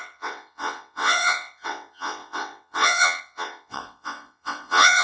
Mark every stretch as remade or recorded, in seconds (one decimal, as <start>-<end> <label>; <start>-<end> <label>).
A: 0.0-5.0 remade